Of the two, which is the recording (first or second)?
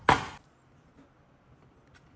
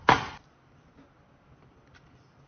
first